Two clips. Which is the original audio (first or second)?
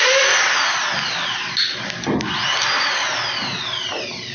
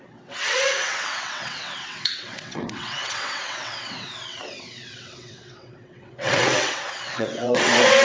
first